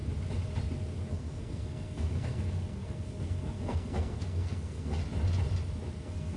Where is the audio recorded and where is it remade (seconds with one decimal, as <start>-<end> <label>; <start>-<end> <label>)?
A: 0.0-1.1 recorded; 1.1-5.0 remade; 5.0-6.0 recorded; 6.0-6.4 remade